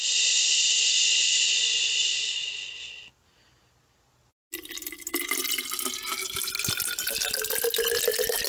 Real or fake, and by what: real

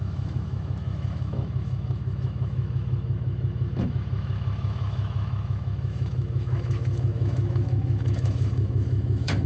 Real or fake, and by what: fake, autoencoder, DAC-VAE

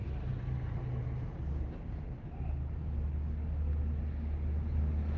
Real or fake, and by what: real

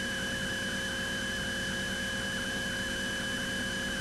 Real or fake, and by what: real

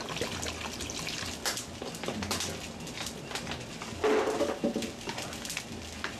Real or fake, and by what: real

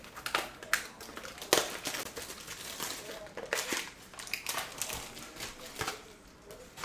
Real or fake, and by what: real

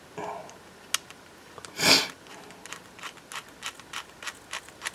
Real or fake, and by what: real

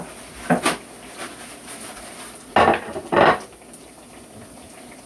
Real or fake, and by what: real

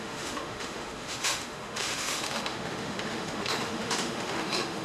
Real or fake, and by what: fake, autoencoder, DAC-VAE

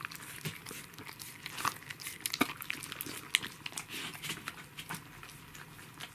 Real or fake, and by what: real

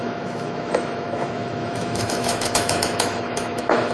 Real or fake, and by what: fake, autoencoder, DAC-VAE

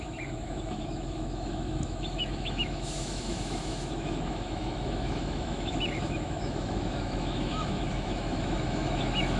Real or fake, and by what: fake, autoencoder, DAC-VAE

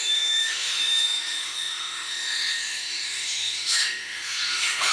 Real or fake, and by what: fake, autoencoder, DAC-VAE